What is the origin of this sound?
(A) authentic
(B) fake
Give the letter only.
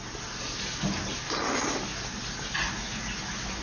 A